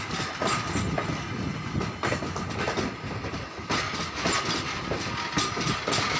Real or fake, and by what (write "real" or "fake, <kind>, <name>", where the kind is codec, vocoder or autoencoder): real